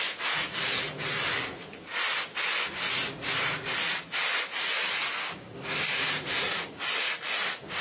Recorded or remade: recorded